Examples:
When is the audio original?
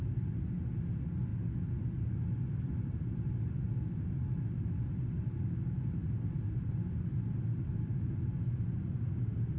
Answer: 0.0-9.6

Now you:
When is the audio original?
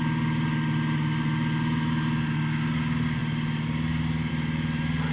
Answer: 0.0-5.1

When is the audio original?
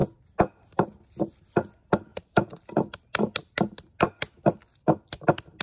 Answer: 0.0-5.6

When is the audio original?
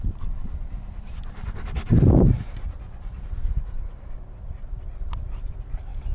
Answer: 0.0-6.1